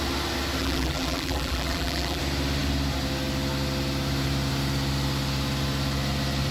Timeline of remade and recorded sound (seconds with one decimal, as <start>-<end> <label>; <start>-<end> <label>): 0.0-0.6 recorded; 0.6-2.2 remade; 2.2-6.5 recorded